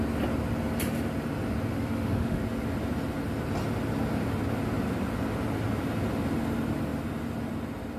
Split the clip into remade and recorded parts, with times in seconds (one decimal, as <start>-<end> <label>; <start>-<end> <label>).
0.0-1.7 recorded; 1.7-2.4 remade; 2.4-8.0 recorded